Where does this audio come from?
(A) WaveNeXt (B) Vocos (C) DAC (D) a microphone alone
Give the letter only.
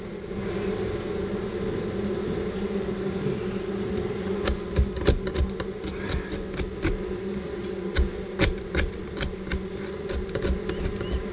D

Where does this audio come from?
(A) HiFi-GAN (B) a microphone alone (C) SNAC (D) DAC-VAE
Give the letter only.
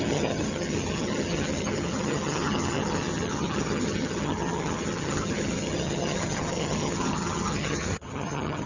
A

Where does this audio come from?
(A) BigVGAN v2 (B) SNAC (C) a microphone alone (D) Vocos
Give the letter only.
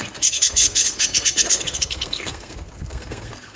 B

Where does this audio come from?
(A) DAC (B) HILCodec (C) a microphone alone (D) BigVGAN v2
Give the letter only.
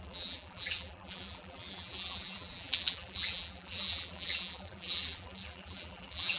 D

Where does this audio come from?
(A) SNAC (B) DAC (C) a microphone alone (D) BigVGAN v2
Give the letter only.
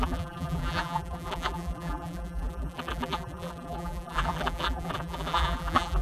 D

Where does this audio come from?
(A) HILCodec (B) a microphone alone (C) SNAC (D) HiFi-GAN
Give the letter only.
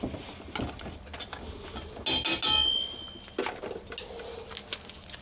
B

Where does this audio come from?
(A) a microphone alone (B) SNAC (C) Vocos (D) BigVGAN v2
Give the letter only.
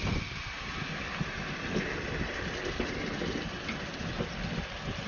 A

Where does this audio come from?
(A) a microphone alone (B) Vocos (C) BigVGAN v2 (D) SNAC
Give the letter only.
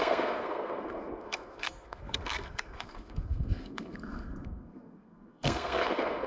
D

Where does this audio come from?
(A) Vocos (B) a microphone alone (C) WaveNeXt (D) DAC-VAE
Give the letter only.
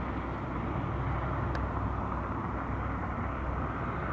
B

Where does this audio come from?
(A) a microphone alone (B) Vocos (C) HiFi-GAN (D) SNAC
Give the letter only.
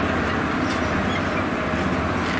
A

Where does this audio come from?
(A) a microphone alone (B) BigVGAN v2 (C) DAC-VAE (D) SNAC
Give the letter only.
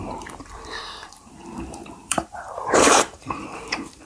B